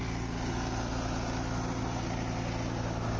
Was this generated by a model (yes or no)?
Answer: no